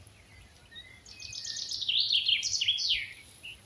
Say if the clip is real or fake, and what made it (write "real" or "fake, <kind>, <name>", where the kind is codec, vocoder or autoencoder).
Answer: real